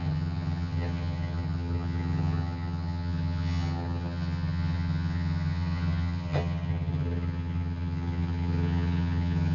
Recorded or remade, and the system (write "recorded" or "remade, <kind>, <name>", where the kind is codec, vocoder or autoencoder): remade, vocoder, HiFi-GAN